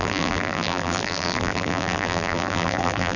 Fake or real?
fake